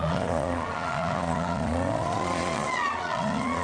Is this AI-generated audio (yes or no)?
yes